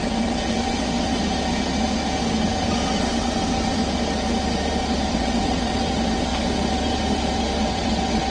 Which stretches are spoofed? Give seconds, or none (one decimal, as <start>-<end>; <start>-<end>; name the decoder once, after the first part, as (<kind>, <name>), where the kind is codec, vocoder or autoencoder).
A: 0.0-1.2 (vocoder, WaveNeXt); 3.0-3.8; 5.1-6.3; 7.6-8.3